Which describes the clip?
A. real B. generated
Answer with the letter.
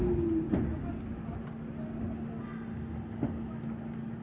A